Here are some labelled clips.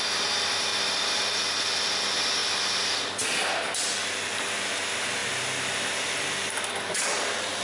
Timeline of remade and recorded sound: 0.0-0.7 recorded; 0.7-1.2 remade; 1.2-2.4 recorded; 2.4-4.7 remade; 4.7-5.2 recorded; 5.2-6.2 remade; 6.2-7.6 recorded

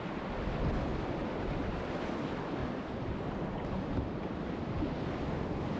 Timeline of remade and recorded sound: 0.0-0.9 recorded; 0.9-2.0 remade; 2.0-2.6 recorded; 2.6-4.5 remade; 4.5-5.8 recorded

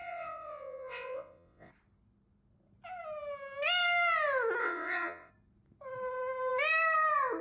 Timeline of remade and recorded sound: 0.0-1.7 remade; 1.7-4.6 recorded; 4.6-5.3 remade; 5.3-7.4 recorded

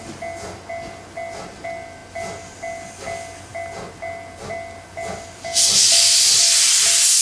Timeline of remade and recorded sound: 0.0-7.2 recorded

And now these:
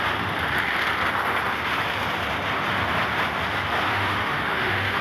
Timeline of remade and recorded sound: 0.0-3.9 recorded; 3.9-5.0 remade